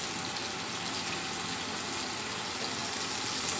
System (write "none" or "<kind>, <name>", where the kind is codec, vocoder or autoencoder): none